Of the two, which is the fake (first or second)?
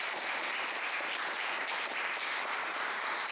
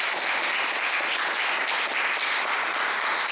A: first